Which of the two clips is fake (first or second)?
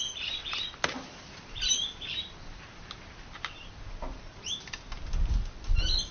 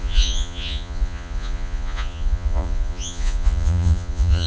second